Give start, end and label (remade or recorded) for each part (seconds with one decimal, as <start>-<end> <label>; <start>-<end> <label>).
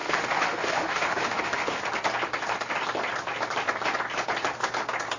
0.0-1.8 remade; 1.8-5.2 recorded